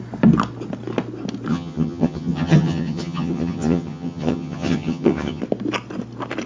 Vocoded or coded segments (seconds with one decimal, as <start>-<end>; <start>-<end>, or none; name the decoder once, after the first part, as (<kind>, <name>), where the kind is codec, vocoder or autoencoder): 1.5-5.4 (vocoder, HiFi-GAN)